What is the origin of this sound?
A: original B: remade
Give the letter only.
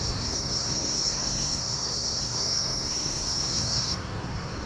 B